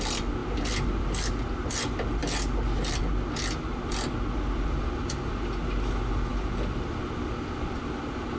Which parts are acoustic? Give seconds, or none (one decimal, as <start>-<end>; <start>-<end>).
0.0-8.4